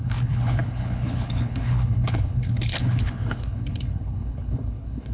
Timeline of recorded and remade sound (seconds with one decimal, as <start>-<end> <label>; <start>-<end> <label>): 0.0-5.1 remade